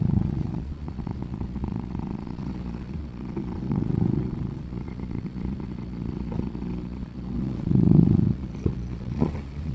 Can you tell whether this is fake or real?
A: fake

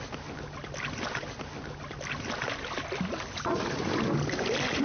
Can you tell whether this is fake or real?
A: real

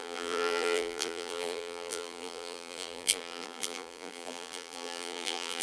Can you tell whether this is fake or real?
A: fake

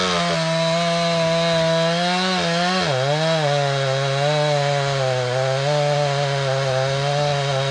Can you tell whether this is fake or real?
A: real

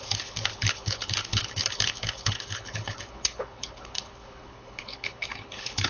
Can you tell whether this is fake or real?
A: fake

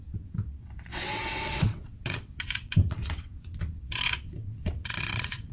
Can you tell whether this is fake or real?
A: fake